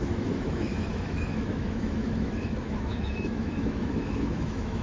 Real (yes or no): no